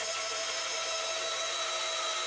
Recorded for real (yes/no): yes